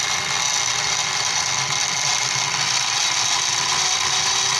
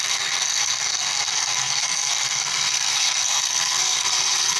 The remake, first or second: second